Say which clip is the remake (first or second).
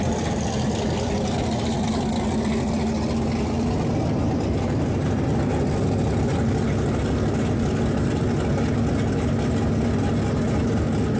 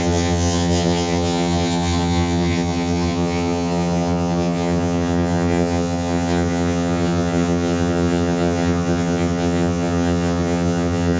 second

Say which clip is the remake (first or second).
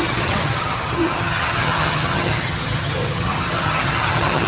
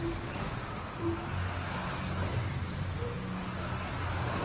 first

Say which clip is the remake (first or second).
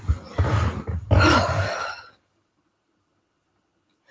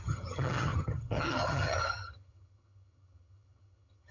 second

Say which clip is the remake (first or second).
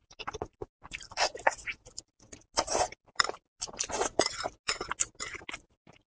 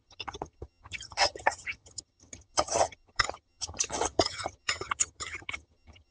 second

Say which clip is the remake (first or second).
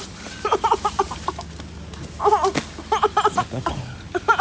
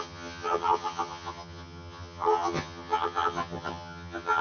second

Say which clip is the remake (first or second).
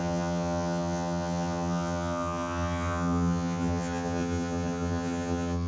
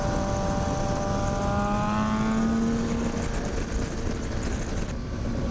first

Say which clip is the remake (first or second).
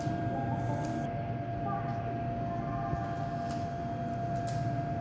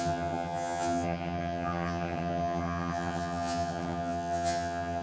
second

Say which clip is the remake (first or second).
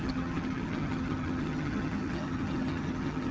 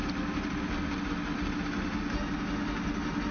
first